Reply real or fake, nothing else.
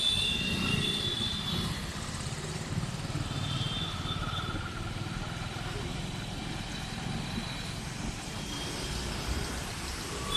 real